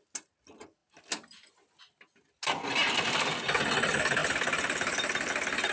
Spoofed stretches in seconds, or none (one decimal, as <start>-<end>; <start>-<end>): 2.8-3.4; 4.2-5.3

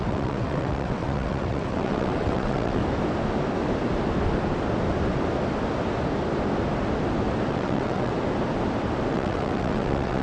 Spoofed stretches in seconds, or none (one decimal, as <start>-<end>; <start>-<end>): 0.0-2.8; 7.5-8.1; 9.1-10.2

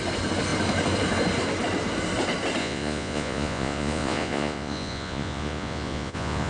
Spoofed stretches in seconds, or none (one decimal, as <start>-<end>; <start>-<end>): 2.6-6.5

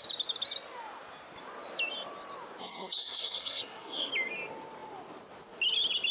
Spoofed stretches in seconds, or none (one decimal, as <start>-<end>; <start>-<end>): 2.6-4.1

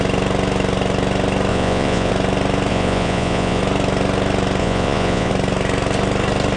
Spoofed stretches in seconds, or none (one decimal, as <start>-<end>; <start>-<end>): 1.5-2.1; 2.7-3.6; 4.6-5.3

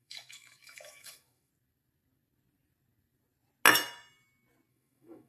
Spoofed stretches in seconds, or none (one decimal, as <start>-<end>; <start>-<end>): 0.0-1.5; 4.7-5.3